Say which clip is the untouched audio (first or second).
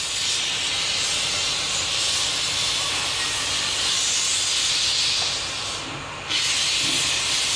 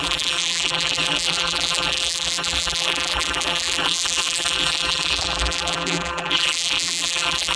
first